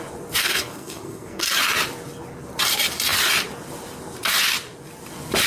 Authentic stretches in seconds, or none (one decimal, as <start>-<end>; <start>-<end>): 0.0-0.4; 1.5-5.5